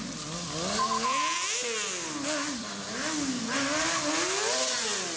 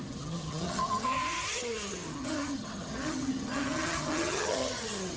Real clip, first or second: first